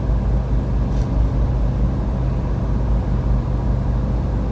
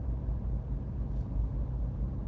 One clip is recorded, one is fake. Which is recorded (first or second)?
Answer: first